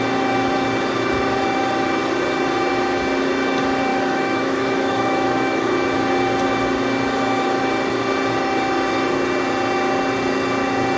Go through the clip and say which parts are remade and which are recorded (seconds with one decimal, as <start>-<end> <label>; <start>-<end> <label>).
0.0-3.9 recorded; 3.9-5.7 remade; 5.7-11.0 recorded